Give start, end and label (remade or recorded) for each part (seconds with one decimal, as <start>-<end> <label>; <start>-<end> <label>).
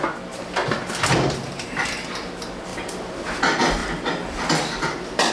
0.0-2.7 recorded; 2.7-3.3 remade; 3.3-3.8 recorded; 3.8-5.3 remade